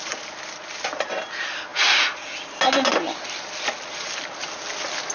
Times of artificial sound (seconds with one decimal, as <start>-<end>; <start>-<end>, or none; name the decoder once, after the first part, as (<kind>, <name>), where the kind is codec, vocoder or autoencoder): none